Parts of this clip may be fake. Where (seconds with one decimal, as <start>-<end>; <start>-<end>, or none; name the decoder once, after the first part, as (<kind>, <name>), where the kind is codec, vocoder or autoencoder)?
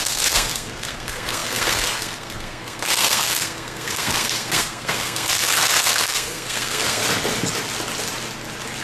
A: 0.0-7.0 (codec, SNAC)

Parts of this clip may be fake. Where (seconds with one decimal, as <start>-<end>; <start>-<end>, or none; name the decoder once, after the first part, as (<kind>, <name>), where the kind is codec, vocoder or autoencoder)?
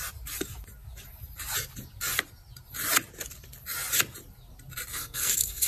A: 4.9-5.7 (codec, SNAC)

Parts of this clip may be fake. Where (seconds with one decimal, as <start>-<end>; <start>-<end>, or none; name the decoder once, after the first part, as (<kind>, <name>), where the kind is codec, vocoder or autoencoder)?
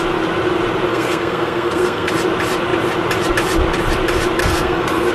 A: 0.9-2.1 (codec, SNAC); 4.4-5.1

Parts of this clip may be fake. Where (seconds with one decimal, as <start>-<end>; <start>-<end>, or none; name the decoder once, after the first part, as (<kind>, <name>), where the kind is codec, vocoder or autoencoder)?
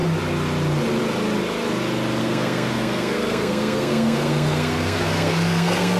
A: 2.2-6.0 (codec, SNAC)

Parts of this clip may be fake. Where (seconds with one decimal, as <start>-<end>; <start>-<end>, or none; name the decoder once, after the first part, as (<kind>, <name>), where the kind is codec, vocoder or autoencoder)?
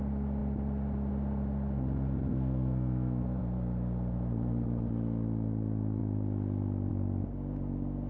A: 2.3-3.4 (codec, SNAC)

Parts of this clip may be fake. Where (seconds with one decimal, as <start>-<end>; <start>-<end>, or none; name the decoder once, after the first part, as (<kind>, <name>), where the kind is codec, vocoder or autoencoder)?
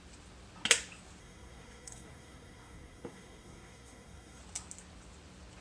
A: 1.2-4.4 (codec, SNAC)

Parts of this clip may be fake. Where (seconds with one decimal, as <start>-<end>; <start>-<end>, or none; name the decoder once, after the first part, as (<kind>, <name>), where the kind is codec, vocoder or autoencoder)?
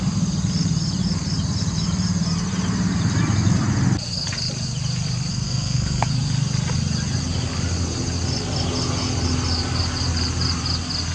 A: 5.3-6.1 (codec, SNAC)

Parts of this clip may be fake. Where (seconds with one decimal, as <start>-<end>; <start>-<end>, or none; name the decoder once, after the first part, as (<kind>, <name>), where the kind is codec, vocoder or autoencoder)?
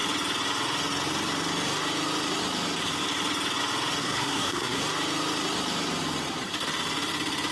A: 4.0-4.8 (codec, SNAC)